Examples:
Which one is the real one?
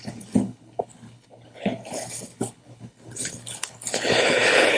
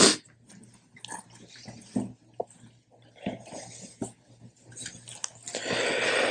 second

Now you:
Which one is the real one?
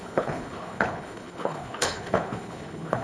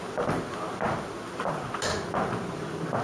second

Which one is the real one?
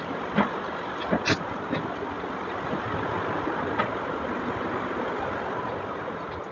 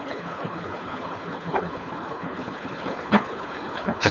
first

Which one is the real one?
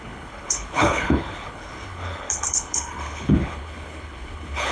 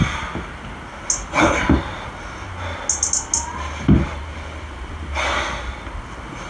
second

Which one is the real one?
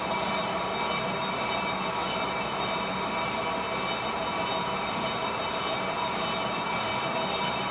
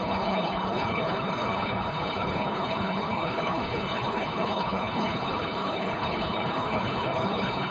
first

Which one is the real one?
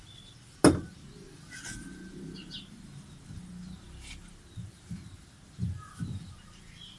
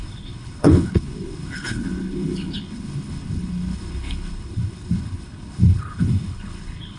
first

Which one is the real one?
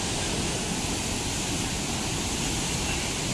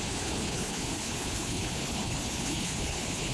first